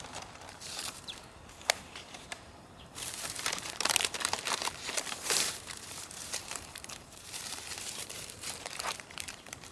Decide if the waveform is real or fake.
fake